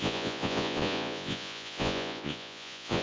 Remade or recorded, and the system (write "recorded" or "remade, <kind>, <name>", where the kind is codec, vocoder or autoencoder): remade, vocoder, Vocos